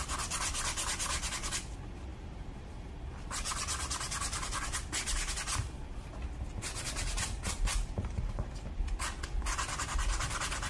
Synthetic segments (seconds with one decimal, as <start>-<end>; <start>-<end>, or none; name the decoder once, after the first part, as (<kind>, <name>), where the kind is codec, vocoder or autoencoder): 2.1-2.9 (vocoder, BigVGAN v2); 7.7-8.5